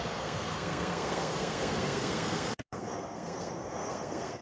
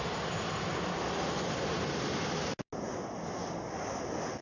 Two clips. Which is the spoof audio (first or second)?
first